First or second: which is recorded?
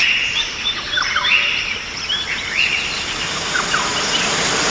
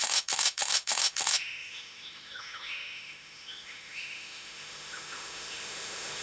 first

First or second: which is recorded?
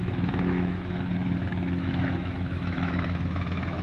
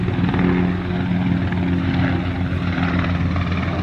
second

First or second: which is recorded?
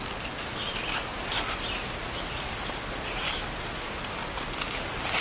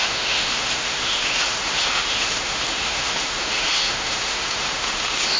first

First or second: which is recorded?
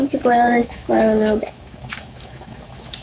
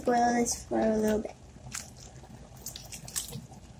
second